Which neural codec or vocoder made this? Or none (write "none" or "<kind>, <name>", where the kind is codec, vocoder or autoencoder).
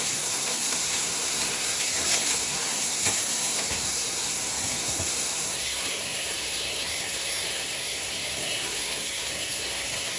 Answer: codec, SNAC